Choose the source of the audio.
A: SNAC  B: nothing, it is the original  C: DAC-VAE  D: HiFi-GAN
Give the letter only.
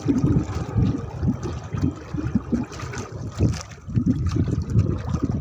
B